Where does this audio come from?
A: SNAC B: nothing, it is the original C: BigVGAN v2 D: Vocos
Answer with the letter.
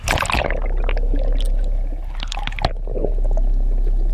B